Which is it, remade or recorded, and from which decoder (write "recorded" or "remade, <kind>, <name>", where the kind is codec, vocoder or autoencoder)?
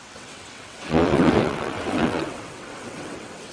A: remade, vocoder, WaveNeXt